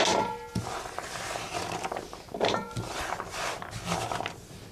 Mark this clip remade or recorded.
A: recorded